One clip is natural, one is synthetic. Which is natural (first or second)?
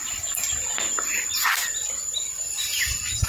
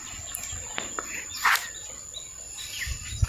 second